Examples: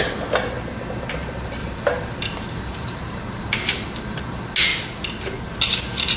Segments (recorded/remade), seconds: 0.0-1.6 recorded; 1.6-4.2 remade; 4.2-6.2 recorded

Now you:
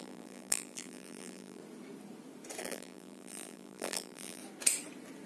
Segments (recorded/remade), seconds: 0.0-1.6 remade; 1.6-2.6 recorded; 2.6-4.4 remade; 4.4-5.3 recorded

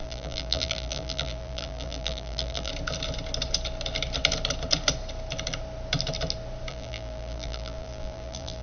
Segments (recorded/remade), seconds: 0.0-2.7 remade; 2.7-6.7 recorded; 6.7-8.6 remade

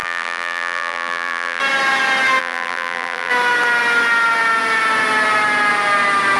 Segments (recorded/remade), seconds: 0.0-1.6 remade; 1.6-2.4 recorded; 2.4-3.3 remade; 3.3-6.4 recorded

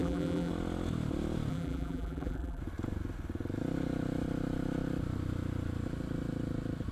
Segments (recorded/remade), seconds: 0.0-0.5 remade; 0.5-1.5 recorded; 1.5-2.6 remade; 2.6-6.9 recorded

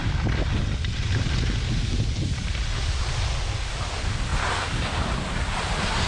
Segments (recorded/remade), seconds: 0.0-3.7 recorded; 3.7-6.1 remade